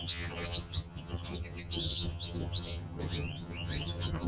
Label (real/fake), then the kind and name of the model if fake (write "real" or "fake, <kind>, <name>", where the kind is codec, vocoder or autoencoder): fake, vocoder, HiFi-GAN